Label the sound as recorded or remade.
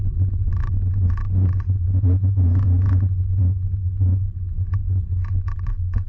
remade